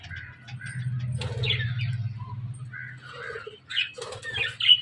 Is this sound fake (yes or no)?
no